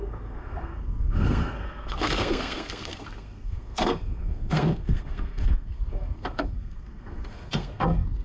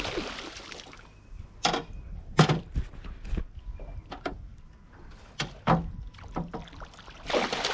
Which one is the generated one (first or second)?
first